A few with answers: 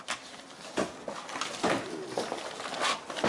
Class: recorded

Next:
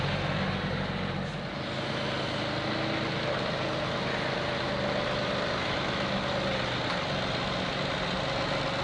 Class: recorded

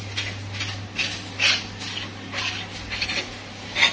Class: recorded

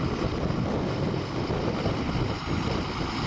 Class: recorded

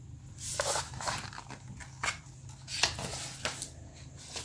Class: recorded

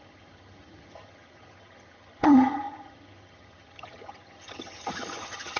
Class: remade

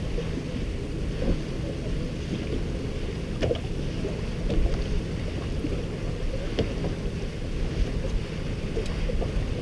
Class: recorded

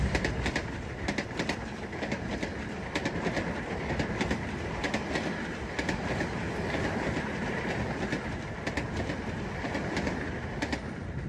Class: recorded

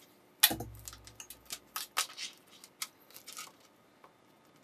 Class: recorded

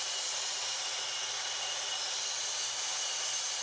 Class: recorded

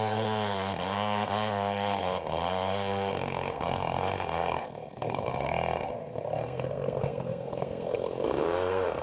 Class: remade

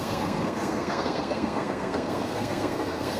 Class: remade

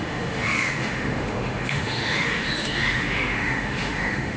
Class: remade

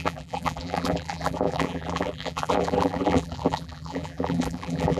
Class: remade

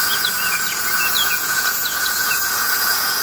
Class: remade